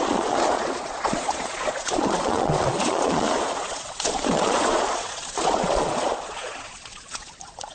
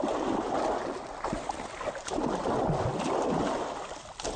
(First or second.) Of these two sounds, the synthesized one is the first